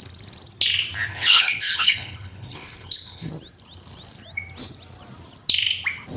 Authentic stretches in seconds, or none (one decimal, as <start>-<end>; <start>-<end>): 0.0-1.1; 3.3-6.2